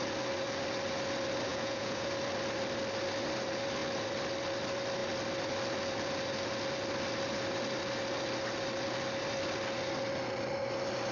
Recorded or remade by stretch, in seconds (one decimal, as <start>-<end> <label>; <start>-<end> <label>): 0.0-1.5 recorded; 1.5-2.1 remade; 2.1-11.1 recorded